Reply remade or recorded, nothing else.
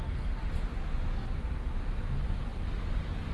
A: recorded